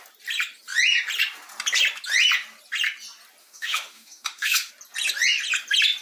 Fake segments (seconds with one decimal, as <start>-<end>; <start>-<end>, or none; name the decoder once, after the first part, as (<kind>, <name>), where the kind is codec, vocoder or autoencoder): 3.4-4.7 (autoencoder, DAC-VAE)